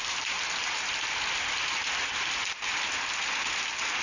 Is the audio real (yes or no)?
yes